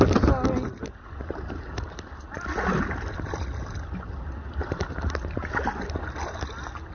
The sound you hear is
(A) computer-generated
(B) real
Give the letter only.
B